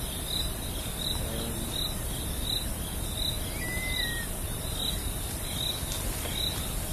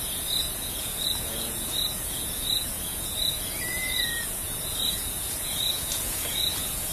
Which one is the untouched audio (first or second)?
first